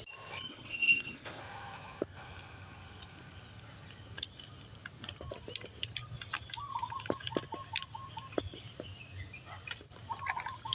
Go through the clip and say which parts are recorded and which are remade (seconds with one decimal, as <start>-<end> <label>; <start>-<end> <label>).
0.0-0.5 recorded; 0.5-1.4 remade; 1.4-10.7 recorded